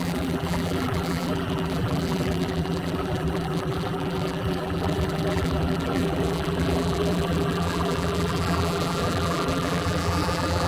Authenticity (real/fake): fake